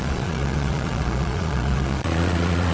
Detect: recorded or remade remade